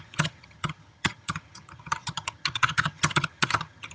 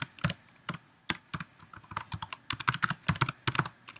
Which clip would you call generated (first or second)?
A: first